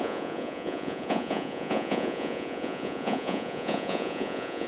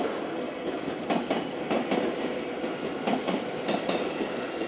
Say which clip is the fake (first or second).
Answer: first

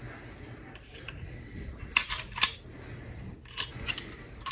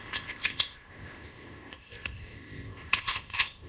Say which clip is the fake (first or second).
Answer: second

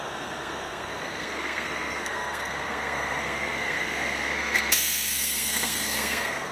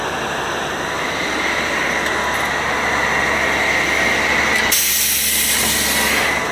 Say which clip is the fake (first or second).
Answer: first